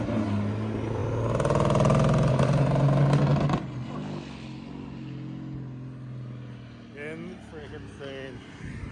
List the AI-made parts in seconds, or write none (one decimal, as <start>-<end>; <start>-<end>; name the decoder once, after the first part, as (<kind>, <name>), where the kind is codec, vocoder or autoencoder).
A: none

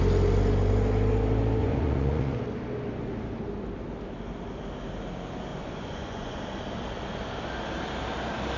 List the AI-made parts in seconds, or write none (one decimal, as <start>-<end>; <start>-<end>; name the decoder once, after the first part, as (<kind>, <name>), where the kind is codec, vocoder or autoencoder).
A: 1.6-2.4 (vocoder, Vocos); 5.5-6.4

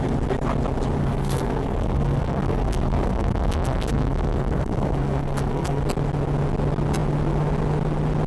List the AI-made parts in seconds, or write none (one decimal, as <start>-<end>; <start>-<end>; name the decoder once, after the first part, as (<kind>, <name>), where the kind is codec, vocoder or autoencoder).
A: 1.0-5.8 (codec, SNAC)